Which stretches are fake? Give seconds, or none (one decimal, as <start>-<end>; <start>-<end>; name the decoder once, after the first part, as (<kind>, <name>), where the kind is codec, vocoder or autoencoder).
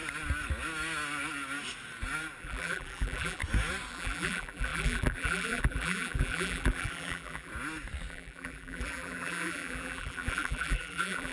2.4-3.4 (vocoder, BigVGAN v2); 3.9-7.5; 8.1-11.3